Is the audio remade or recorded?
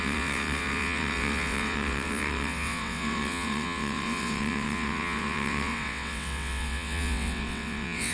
remade